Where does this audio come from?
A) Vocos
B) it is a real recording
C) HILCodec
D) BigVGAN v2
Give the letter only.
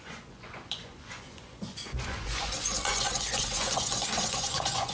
A